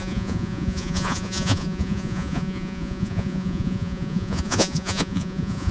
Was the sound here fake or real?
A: fake